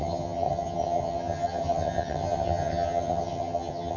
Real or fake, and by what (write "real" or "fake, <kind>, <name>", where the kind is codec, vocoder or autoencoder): fake, vocoder, HiFi-GAN